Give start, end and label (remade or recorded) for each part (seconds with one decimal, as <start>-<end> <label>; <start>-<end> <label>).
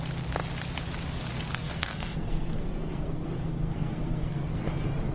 0.0-1.5 recorded; 1.5-4.6 remade; 4.6-5.1 recorded